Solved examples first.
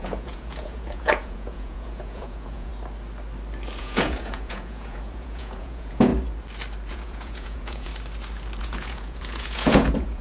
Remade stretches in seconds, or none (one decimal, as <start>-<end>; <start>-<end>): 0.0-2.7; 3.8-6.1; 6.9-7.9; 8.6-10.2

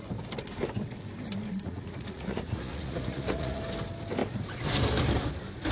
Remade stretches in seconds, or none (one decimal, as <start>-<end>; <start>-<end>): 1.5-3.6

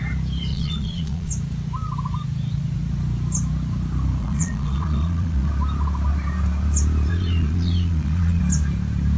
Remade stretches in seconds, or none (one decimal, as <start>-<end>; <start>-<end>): 0.5-1.3; 4.2-5.5; 7.1-8.4

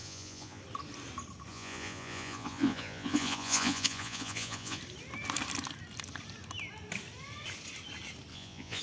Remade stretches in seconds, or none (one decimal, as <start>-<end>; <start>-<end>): 0.0-0.6; 1.5-4.8; 8.3-8.8